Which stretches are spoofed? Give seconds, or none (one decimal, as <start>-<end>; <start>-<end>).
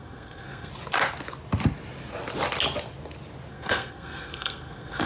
0.0-0.7; 3.5-5.1